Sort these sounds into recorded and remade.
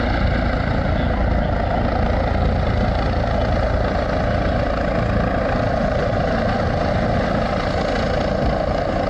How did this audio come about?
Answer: recorded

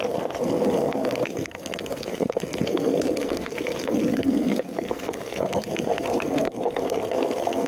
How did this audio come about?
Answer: remade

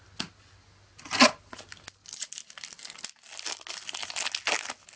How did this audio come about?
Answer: recorded